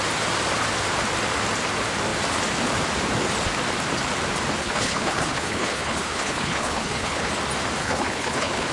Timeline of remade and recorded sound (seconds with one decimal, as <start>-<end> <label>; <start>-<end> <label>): 0.0-4.6 recorded; 4.6-7.3 remade; 7.3-7.8 recorded; 7.8-8.7 remade